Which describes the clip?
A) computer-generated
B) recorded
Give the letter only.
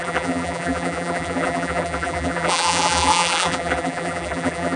A